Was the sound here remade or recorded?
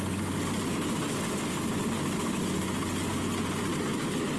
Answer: recorded